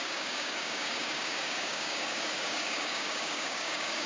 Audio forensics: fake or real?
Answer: fake